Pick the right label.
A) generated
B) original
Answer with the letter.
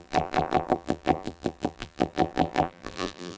A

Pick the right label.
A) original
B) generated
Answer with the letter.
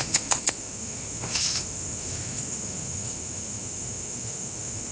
B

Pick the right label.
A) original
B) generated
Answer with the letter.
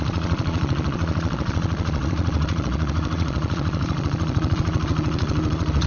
B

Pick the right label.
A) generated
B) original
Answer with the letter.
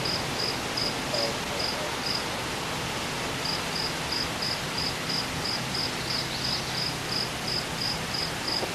B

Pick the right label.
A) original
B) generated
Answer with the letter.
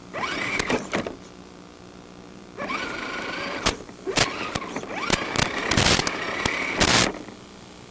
A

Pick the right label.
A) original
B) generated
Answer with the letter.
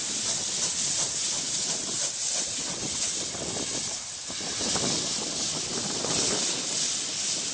A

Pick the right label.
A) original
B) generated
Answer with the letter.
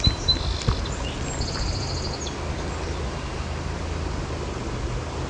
A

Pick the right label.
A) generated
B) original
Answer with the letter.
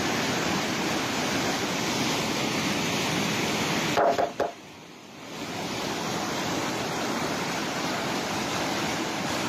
A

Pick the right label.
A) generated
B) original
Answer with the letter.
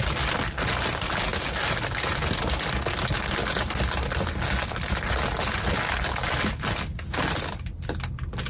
B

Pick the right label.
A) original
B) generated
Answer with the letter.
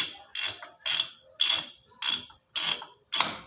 A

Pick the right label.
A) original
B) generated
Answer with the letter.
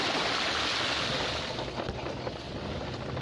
A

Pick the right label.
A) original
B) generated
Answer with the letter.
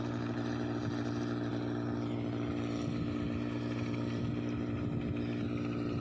A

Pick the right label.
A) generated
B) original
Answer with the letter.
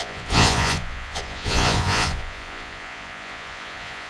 A